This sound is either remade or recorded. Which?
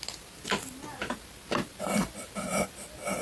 recorded